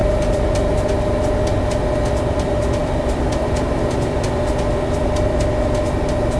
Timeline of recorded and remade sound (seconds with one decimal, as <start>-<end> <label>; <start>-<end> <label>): 0.0-0.7 remade; 0.7-2.8 recorded; 2.8-5.1 remade; 5.1-6.4 recorded